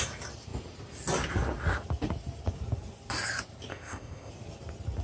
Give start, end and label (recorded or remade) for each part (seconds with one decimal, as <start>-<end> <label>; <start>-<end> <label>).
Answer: 0.0-3.7 recorded; 3.7-4.3 remade; 4.3-5.0 recorded